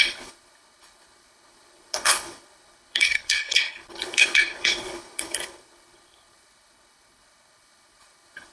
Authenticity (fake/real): fake